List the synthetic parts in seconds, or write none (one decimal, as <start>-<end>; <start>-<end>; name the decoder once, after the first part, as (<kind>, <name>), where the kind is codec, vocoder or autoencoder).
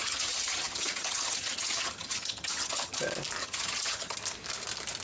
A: 0.0-3.0 (vocoder, HiFi-GAN); 3.4-4.2